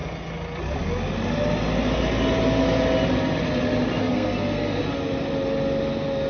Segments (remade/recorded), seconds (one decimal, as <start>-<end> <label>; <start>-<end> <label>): 0.0-4.0 recorded; 4.0-4.8 remade; 4.8-6.3 recorded